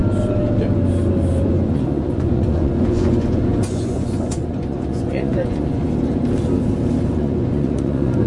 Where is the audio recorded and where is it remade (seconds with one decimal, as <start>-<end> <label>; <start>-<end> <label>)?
0.0-1.4 recorded; 1.4-5.8 remade; 5.8-7.1 recorded; 7.1-8.3 remade

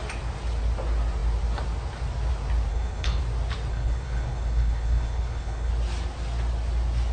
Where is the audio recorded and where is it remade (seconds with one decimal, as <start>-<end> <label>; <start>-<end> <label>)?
0.0-2.7 recorded; 2.7-3.2 remade; 3.2-3.7 recorded; 3.7-5.7 remade; 5.7-7.1 recorded

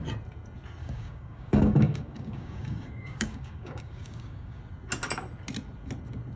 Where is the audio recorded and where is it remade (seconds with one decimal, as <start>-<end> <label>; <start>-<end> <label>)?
0.0-0.8 recorded; 0.8-4.6 remade; 4.6-6.4 recorded

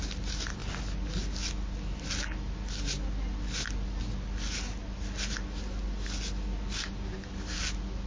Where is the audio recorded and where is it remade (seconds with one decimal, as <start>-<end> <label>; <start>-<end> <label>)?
0.0-8.1 recorded

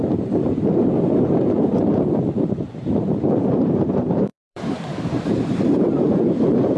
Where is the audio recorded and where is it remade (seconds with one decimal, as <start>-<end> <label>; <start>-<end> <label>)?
0.0-0.4 remade; 0.4-3.5 recorded; 3.5-6.8 remade